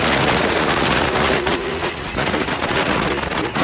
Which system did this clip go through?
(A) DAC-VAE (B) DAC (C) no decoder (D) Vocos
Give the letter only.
D